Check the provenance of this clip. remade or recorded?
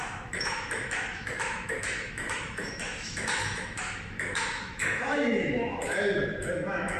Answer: remade